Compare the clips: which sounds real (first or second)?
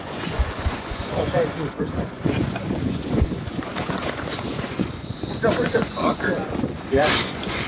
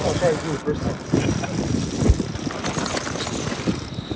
second